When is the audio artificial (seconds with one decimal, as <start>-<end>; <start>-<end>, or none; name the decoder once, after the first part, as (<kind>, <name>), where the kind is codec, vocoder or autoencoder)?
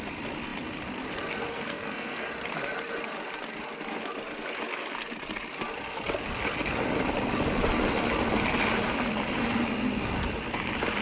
1.5-2.3 (codec, SNAC)